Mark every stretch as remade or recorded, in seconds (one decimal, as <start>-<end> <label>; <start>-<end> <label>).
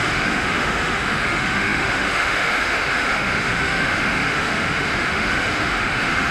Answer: 0.0-6.3 remade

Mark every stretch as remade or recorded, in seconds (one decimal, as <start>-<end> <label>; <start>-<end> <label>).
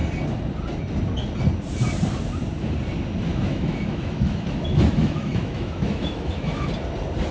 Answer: 0.0-3.3 recorded; 3.3-6.7 remade; 6.7-7.3 recorded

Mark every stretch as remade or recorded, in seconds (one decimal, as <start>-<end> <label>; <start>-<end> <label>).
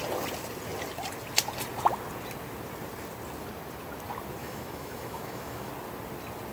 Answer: 0.0-4.4 recorded; 4.4-5.7 remade; 5.7-6.5 recorded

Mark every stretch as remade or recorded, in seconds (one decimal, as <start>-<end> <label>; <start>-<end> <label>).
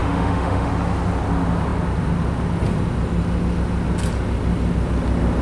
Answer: 0.0-0.7 remade; 0.7-5.4 recorded